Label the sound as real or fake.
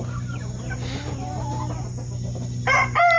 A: real